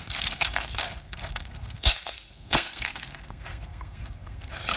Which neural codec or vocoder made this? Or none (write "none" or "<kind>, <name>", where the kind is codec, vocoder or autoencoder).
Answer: codec, SNAC